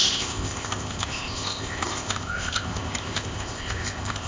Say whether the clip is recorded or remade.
remade